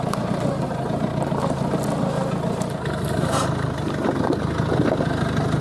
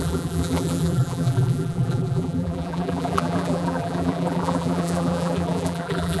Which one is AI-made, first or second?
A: second